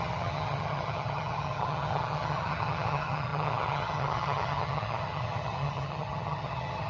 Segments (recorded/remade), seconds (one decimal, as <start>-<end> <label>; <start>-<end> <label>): 0.0-6.9 remade